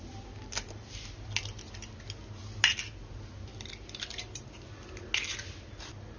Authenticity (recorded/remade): recorded